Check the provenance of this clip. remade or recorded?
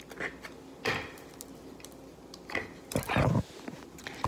recorded